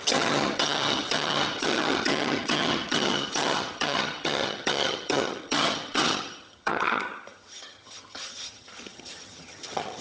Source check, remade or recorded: remade